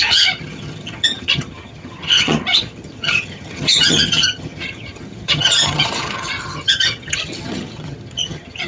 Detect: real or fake fake